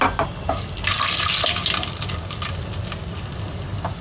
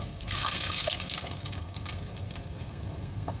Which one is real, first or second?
first